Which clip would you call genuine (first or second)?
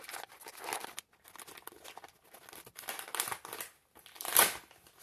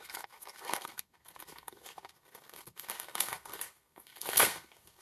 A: first